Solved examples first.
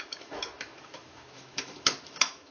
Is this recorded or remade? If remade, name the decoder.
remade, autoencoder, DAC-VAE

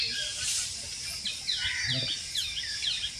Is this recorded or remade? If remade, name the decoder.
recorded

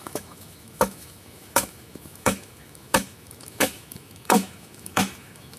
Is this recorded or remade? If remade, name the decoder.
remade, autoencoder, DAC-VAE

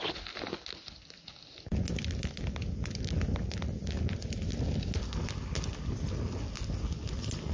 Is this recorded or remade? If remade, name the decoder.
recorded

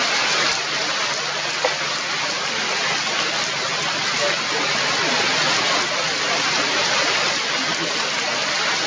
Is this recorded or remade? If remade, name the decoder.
recorded